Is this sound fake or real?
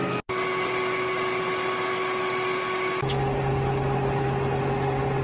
real